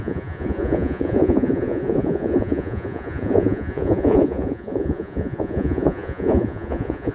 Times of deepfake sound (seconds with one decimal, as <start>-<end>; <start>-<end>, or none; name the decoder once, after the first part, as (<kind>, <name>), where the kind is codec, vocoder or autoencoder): 0.0-7.1 (vocoder, Vocos)